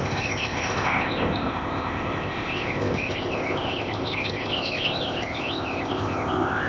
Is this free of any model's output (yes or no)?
no